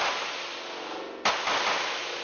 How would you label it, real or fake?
real